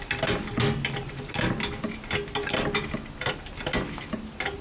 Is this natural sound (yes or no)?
yes